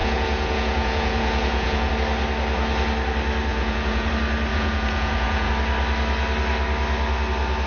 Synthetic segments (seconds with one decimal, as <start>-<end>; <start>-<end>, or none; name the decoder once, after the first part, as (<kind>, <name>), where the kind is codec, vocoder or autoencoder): 0.0-1.9 (vocoder, Vocos); 3.5-4.1; 4.5-5.5